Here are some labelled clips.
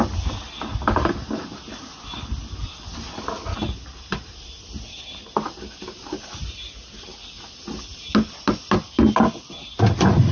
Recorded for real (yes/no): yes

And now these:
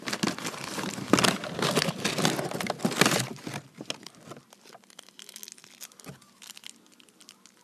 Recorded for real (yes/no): yes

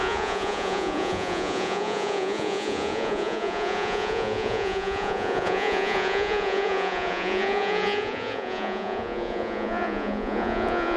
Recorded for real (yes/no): no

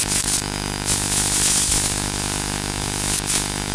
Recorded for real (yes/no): no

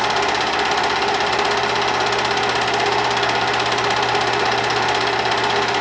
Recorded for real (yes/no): yes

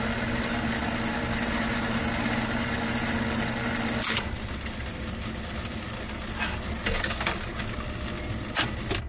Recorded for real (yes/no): yes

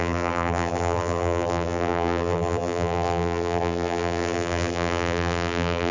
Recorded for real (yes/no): no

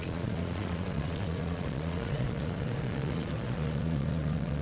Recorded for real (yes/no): no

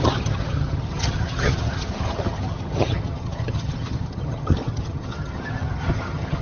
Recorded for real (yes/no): no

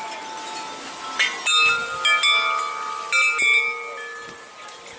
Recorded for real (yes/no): yes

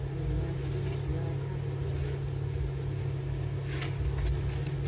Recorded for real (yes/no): yes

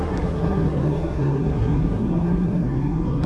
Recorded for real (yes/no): no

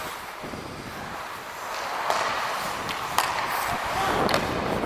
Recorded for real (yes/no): yes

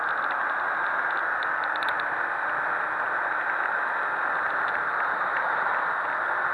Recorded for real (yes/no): yes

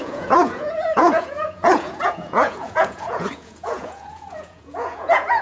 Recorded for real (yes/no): no